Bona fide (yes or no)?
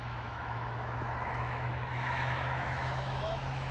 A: no